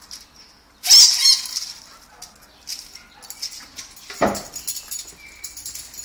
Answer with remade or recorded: recorded